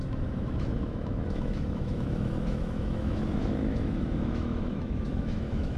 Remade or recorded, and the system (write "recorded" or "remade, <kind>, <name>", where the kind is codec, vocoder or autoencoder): remade, autoencoder, DAC-VAE